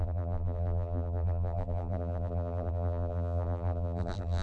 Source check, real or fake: fake